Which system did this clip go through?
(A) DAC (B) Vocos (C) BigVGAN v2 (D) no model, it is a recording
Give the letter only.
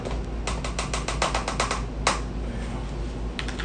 D